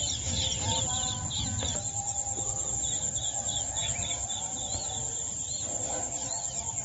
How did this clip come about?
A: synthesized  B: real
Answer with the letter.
B